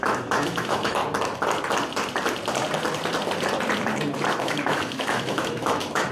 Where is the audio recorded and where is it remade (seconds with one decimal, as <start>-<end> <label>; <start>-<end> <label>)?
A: 0.0-1.0 remade; 1.0-4.3 recorded; 4.3-6.1 remade